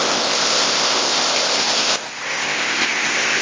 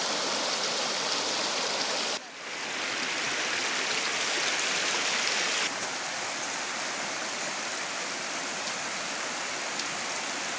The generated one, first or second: first